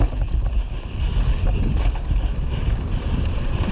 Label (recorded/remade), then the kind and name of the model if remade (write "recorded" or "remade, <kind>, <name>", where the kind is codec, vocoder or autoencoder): recorded